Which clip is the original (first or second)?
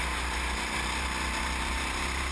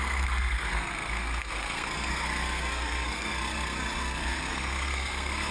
first